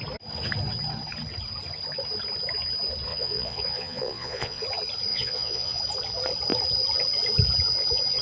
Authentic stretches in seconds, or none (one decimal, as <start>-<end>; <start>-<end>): 0.0-3.1; 4.6-5.1; 5.8-8.2